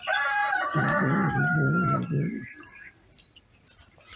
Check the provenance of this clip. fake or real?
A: fake